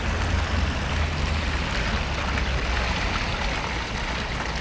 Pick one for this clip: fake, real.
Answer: real